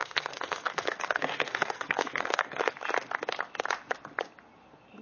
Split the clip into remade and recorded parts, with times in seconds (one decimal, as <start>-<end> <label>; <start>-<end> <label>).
0.0-2.7 remade; 2.7-5.0 recorded